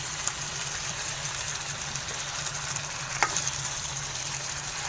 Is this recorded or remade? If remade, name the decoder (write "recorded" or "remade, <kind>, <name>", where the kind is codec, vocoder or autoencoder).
remade, vocoder, BigVGAN v2